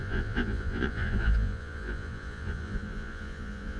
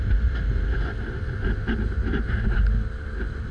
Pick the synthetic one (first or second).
first